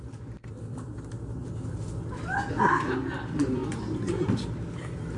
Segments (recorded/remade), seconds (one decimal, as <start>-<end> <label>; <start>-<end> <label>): 0.0-1.4 remade; 1.4-2.6 recorded; 2.6-5.2 remade

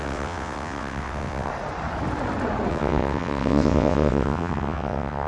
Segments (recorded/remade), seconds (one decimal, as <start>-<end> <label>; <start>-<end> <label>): 0.0-1.5 remade; 1.5-2.7 recorded; 2.7-5.3 remade